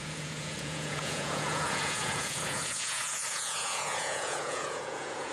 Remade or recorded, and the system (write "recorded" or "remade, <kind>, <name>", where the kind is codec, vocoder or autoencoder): remade, vocoder, Vocos